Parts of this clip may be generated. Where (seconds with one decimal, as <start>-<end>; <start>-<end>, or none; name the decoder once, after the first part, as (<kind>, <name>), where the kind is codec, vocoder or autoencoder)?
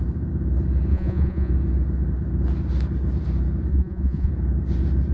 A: 0.9-1.5 (vocoder, Vocos); 3.7-4.3